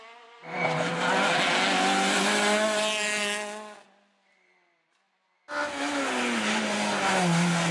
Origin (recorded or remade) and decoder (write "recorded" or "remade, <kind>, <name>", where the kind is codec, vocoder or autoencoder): recorded